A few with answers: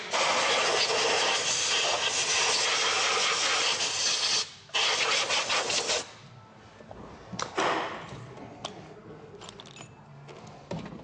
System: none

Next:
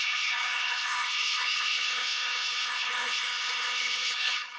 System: codec, HILCodec